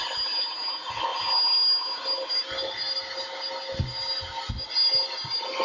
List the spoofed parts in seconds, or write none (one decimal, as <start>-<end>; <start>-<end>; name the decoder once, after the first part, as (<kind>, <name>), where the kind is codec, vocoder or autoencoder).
none